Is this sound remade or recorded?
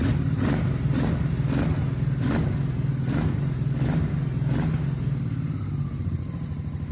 recorded